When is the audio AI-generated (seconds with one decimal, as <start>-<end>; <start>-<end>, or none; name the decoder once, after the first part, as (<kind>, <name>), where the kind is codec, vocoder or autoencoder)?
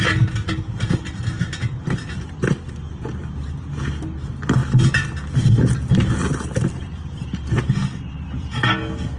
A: none